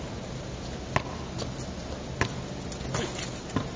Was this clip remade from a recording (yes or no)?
no